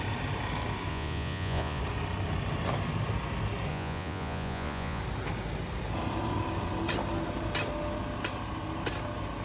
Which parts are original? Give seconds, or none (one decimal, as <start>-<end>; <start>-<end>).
0.0-0.9; 1.8-3.7; 5.0-9.4